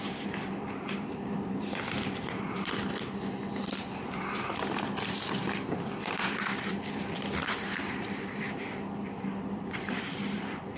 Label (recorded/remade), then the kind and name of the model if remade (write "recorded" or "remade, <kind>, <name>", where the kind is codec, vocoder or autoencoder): remade, vocoder, BigVGAN v2